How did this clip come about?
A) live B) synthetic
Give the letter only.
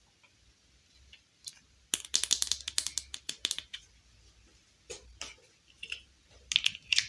A